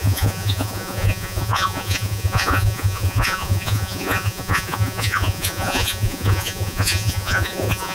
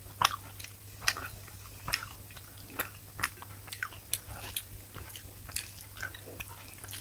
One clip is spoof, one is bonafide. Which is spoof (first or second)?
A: first